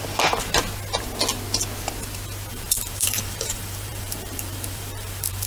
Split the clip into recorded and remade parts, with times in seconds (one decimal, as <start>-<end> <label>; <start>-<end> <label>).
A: 0.0-2.5 recorded; 2.5-5.5 remade